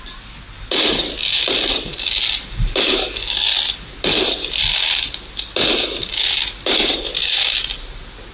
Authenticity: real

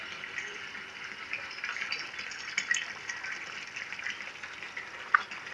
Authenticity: real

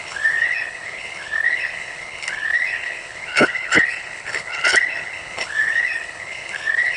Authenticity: fake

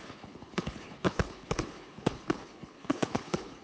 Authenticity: fake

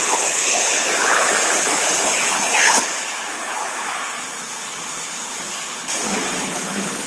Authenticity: fake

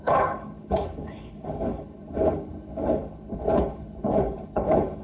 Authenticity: fake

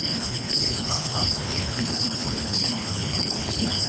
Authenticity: fake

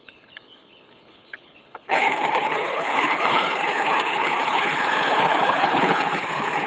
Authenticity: fake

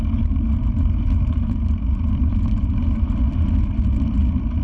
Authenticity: real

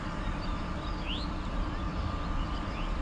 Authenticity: real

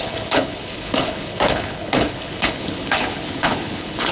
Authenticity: fake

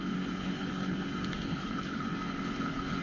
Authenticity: fake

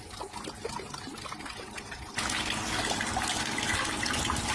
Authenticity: real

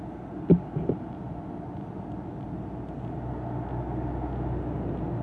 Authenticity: real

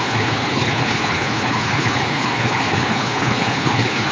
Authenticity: fake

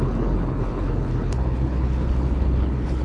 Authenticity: fake